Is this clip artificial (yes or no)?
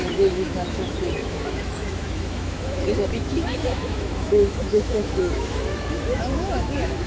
yes